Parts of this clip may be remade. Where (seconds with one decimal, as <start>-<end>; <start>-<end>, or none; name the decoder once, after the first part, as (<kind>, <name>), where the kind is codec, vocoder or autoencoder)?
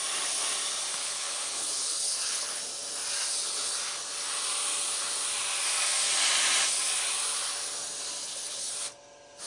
1.0-2.6 (codec, HILCodec); 8.2-8.7